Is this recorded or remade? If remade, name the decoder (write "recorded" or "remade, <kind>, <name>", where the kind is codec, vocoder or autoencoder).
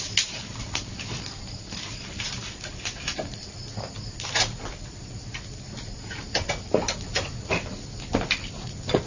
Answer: recorded